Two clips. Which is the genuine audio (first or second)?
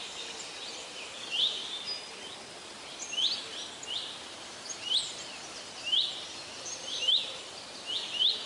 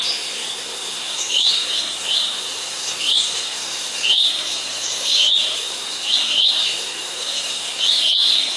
first